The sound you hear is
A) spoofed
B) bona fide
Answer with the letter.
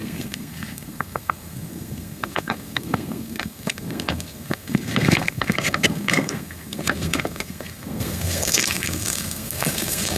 A